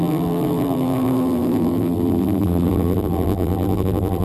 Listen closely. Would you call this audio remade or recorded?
remade